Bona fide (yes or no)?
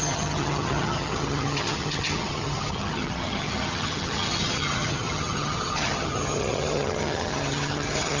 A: no